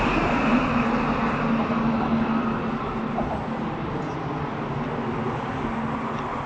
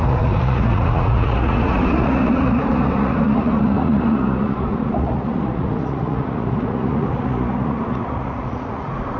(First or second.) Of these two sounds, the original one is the first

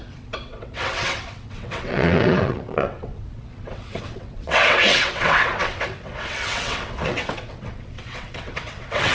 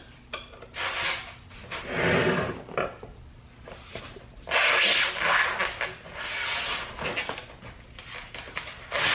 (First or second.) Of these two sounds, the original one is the second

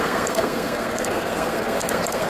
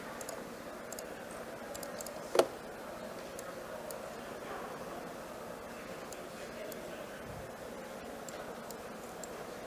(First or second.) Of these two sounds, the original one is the second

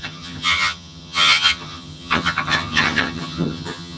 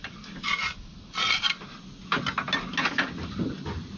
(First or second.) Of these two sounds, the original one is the second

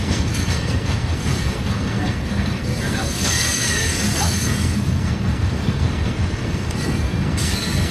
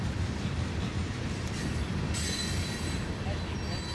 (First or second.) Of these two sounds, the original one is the second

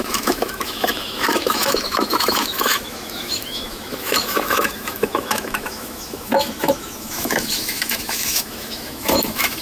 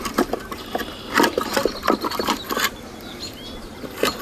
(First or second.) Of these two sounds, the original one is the second